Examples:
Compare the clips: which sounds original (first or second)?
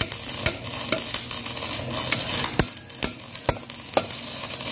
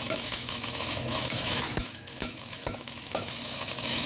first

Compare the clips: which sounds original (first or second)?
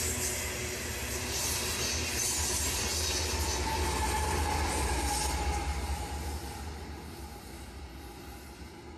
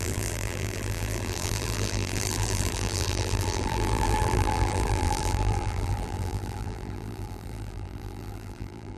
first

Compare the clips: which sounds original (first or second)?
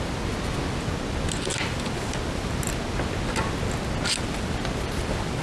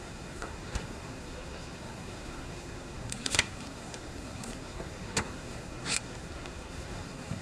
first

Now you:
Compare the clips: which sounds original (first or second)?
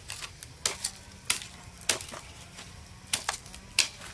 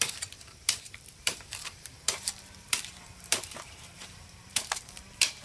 first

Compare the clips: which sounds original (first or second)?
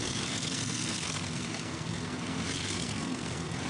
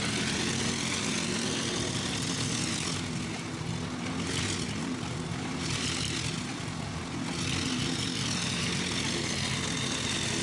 second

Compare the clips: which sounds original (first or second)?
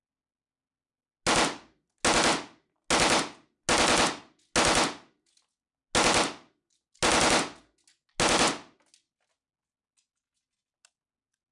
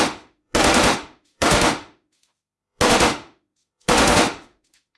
first